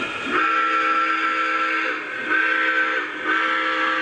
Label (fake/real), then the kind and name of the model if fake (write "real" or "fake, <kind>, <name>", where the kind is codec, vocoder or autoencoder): real